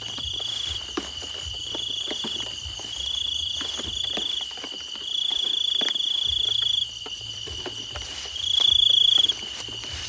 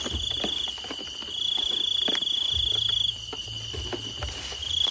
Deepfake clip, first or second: first